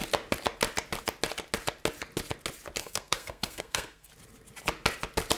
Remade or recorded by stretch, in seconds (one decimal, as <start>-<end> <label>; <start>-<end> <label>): 0.0-2.8 recorded; 2.8-4.1 remade; 4.1-5.4 recorded